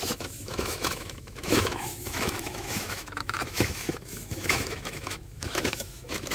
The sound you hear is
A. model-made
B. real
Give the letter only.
A